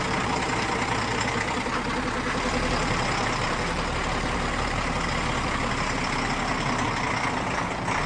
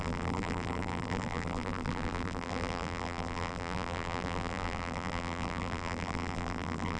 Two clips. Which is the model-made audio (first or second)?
second